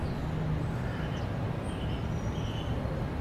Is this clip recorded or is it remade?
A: recorded